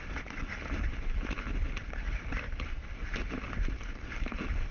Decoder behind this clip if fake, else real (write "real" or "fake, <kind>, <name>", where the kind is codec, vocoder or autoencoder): fake, vocoder, BigVGAN v2